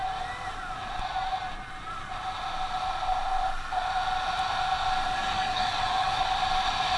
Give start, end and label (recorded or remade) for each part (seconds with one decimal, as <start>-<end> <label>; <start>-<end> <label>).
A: 0.0-5.2 recorded; 5.2-6.2 remade; 6.2-7.0 recorded